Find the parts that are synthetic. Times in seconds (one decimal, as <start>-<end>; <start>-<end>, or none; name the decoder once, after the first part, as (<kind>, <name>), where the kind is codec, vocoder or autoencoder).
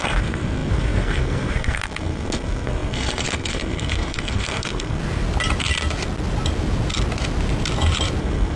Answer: 0.0-5.0 (codec, SNAC); 8.2-8.6